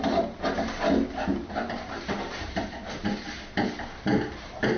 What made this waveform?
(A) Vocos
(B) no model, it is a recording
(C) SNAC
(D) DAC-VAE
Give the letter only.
B